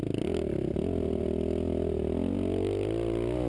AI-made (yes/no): no